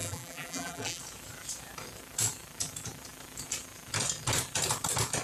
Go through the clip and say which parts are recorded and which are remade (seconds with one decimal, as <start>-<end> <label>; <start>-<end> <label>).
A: 0.0-1.0 remade; 1.0-5.2 recorded